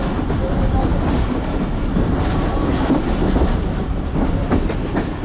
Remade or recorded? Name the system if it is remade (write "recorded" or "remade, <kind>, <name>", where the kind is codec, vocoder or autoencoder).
recorded